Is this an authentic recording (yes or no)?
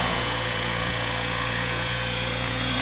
no